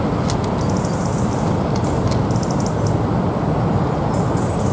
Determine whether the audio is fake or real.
real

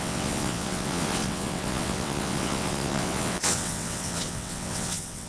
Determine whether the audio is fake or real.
fake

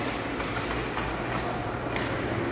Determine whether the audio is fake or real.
real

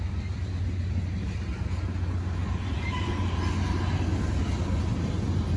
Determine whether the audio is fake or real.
real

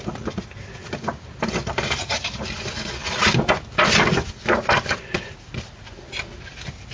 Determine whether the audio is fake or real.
real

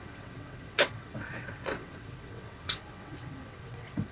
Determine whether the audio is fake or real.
fake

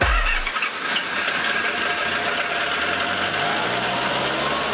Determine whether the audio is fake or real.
real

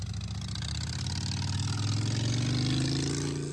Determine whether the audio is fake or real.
real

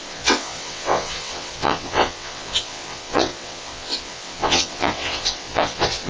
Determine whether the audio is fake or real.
fake